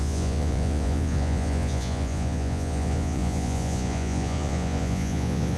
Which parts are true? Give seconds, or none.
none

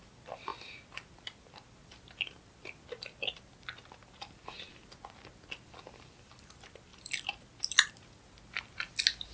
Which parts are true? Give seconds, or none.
0.0-9.3

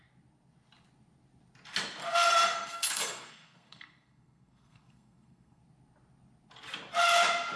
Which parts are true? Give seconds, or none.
0.0-2.0; 5.6-7.6